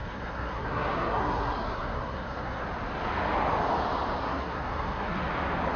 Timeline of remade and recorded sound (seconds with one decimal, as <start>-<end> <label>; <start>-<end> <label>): 0.0-2.6 remade; 2.6-4.2 recorded; 4.2-5.2 remade; 5.2-5.8 recorded

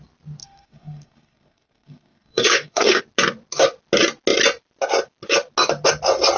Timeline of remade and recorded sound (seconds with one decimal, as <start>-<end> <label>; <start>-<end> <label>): 0.0-0.4 recorded; 0.4-3.0 remade; 3.0-6.4 recorded

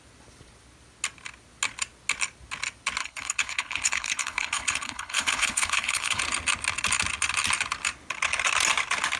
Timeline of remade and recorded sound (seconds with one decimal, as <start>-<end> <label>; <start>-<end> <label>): 0.0-3.0 recorded; 3.0-6.2 remade; 6.2-9.2 recorded

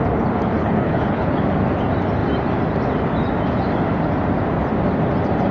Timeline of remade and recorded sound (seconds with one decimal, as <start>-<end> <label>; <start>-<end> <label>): 0.0-0.6 recorded; 0.6-1.4 remade; 1.4-5.5 recorded

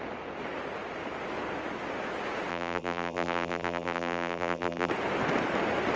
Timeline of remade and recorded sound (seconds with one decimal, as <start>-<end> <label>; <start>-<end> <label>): 0.0-2.5 recorded; 2.5-4.9 remade; 4.9-6.0 recorded

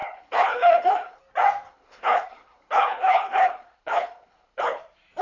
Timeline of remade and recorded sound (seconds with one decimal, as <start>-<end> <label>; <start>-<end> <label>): 0.0-1.2 remade; 1.2-1.7 recorded; 1.7-4.8 remade; 4.8-5.2 recorded

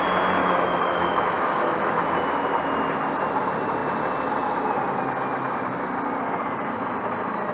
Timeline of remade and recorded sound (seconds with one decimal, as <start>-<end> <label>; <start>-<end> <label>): 0.0-0.4 recorded; 0.4-2.0 remade; 2.0-7.5 recorded

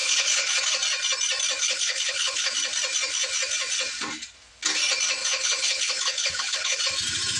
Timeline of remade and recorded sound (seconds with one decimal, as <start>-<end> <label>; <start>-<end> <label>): 0.0-0.6 remade; 0.6-1.6 recorded; 1.6-2.5 remade; 2.5-5.2 recorded; 5.2-6.8 remade; 6.8-7.4 recorded